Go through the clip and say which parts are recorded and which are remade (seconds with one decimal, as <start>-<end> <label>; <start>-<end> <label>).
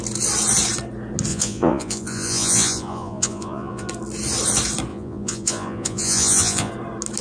0.0-1.3 recorded; 1.3-3.9 remade; 3.9-4.9 recorded; 4.9-6.7 remade; 6.7-7.2 recorded